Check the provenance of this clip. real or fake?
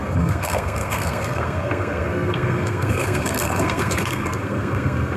fake